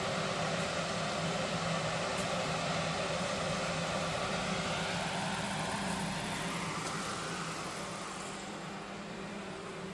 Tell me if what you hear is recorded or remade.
remade